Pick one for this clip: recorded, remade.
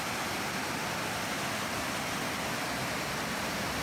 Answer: recorded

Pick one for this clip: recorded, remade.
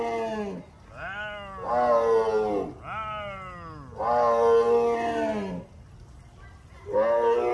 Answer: recorded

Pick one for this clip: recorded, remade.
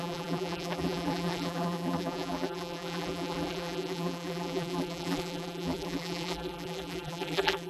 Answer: remade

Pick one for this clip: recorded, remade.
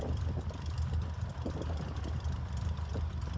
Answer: remade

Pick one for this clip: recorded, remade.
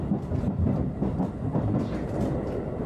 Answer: remade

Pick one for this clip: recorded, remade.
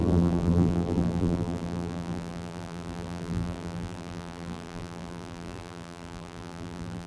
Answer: remade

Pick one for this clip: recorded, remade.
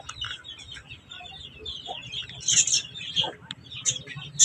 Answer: recorded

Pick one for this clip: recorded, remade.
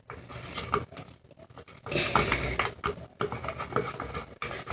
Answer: recorded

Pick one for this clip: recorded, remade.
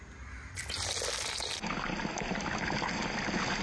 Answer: recorded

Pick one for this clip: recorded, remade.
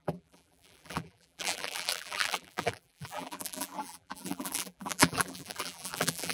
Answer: remade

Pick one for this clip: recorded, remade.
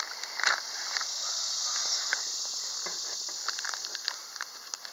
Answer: recorded